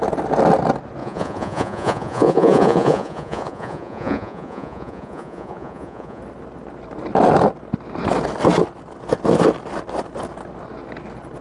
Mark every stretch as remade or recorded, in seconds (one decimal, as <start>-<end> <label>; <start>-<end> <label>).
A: 0.0-1.0 recorded; 1.0-6.2 remade; 6.2-11.4 recorded